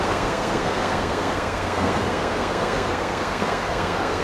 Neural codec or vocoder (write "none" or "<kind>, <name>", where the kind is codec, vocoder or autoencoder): codec, SNAC